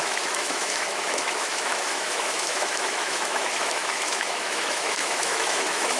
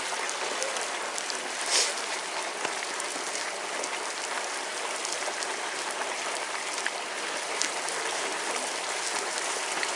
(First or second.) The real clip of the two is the second